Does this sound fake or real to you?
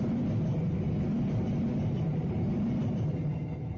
real